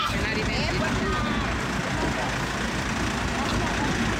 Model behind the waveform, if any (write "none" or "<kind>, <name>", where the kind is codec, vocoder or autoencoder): none